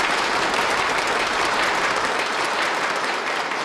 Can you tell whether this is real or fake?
fake